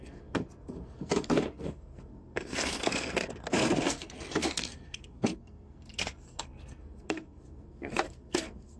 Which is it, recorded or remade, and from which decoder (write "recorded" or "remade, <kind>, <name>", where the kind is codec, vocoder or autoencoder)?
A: remade, codec, SNAC